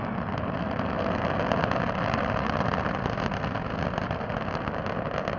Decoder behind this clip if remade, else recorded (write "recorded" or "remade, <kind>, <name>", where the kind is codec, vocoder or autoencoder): recorded